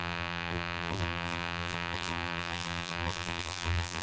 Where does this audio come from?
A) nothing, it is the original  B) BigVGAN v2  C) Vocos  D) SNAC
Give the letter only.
B